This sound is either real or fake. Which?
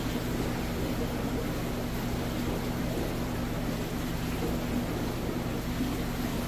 real